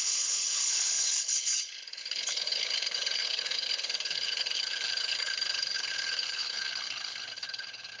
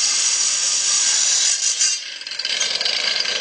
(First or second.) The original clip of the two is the second